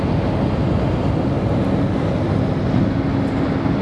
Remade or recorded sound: recorded